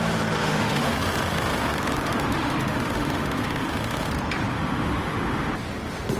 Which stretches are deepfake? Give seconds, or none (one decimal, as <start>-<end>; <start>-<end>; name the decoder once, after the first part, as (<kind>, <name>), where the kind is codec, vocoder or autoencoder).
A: 0.4-4.1 (autoencoder, DAC-VAE); 4.5-5.5